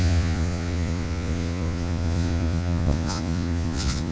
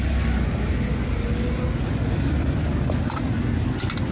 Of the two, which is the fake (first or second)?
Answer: first